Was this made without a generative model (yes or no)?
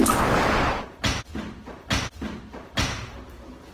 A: yes